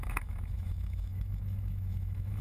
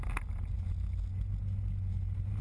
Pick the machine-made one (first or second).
first